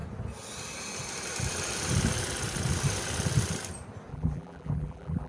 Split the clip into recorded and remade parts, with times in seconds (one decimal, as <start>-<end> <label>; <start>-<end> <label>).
0.0-4.1 recorded; 4.1-5.3 remade